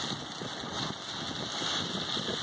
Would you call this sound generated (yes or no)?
no